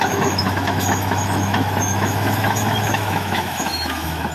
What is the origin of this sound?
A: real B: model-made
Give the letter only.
B